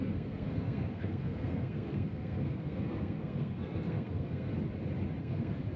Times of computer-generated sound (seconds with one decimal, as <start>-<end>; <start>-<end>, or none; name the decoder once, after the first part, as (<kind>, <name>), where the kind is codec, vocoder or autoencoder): 0.0-4.5 (codec, SNAC); 5.2-5.8